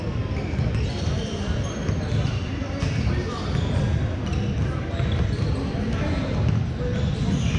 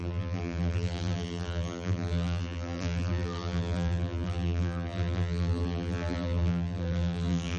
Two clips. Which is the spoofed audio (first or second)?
second